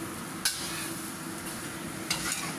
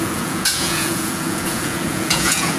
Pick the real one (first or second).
first